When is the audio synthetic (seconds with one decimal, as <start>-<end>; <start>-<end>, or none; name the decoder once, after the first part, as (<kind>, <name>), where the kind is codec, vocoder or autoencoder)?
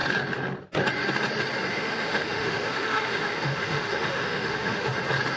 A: 1.7-4.9 (autoencoder, DAC-VAE)